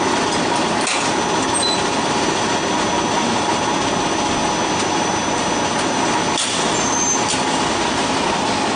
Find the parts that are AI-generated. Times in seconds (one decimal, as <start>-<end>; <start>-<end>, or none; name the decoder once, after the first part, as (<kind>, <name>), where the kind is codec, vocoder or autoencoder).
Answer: none